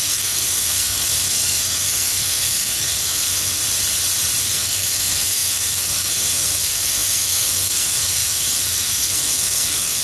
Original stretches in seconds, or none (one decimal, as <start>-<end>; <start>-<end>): 3.6-4.4